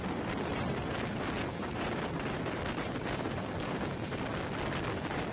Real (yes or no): yes